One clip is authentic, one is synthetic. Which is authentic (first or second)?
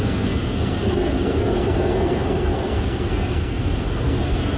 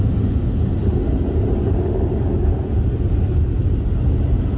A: second